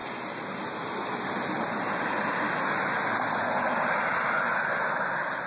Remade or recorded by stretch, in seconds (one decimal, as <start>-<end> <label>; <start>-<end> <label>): 0.0-5.5 recorded